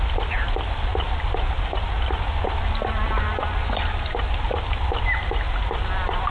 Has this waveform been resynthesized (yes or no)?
no